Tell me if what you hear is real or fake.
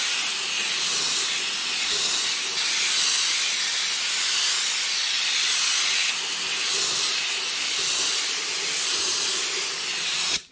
real